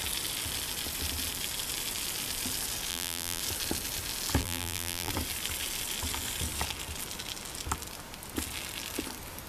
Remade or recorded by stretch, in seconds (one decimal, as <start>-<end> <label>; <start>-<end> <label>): 0.0-2.9 recorded; 2.9-3.4 remade; 3.4-4.4 recorded; 4.4-5.1 remade; 5.1-9.5 recorded